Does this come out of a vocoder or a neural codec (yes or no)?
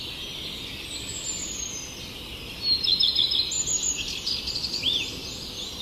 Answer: no